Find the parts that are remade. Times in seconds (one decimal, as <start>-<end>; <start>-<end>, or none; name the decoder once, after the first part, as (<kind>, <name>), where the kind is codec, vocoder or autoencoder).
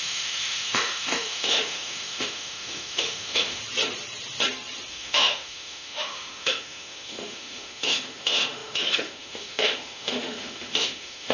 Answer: 0.0-3.6 (autoencoder, DAC-VAE); 4.9-11.3